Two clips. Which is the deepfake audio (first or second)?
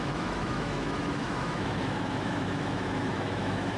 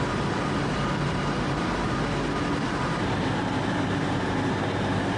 first